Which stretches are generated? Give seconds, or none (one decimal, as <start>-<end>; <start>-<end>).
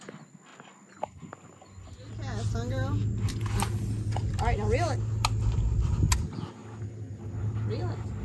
none